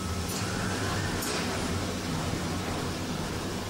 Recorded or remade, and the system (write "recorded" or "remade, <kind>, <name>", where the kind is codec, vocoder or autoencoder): recorded